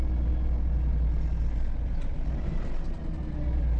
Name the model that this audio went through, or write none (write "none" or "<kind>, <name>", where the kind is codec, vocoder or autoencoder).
none